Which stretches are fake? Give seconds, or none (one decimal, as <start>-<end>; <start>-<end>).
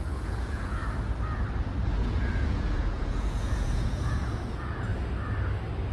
0.0-0.8; 2.0-4.9